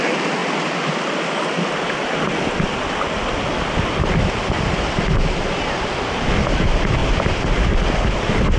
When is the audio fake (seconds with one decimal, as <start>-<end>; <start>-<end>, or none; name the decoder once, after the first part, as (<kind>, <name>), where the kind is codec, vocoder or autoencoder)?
none